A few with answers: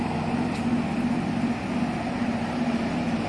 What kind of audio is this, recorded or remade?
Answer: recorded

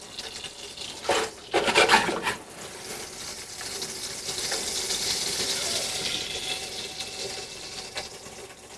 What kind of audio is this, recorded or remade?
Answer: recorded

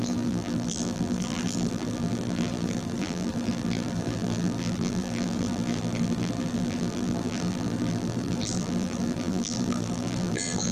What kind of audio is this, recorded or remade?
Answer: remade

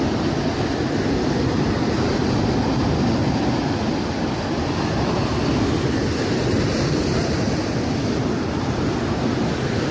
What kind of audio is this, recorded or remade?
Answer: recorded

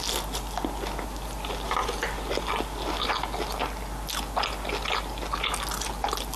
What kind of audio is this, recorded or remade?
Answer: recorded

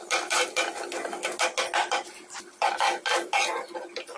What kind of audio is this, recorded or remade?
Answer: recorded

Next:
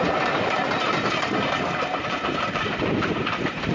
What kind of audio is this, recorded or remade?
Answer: remade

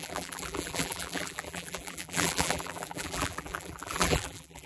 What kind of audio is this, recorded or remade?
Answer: remade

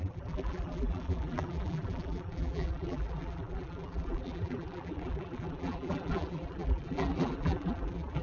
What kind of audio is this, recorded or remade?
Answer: remade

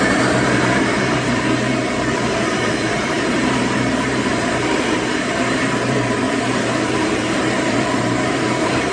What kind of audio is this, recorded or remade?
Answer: remade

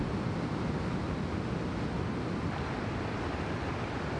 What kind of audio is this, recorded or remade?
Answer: recorded